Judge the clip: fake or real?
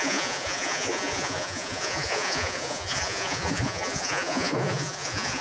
fake